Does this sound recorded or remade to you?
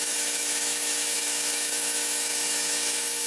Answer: remade